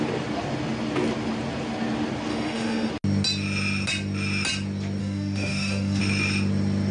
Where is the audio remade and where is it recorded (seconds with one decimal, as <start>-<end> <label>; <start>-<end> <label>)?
0.0-2.3 recorded; 2.3-2.9 remade; 2.9-5.0 recorded; 5.0-6.0 remade; 6.0-6.9 recorded